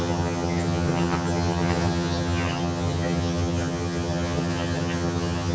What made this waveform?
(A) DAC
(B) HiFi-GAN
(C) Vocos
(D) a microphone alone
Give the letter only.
B